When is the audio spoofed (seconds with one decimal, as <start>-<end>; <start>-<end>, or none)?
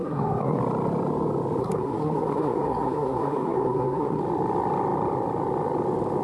0.0-0.6; 1.6-4.2